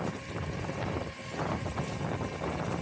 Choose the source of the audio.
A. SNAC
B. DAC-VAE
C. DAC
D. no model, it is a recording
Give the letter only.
D